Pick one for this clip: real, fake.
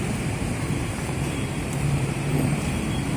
fake